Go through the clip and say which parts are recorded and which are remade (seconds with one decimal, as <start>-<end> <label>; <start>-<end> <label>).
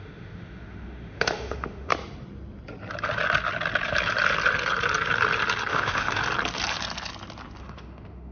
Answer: 0.0-1.9 remade; 1.9-5.7 recorded; 5.7-6.2 remade; 6.2-7.6 recorded; 7.6-8.3 remade